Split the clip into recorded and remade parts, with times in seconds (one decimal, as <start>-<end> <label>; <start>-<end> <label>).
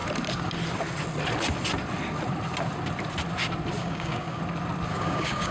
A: 0.0-3.8 recorded; 3.8-4.4 remade; 4.4-4.9 recorded; 4.9-5.5 remade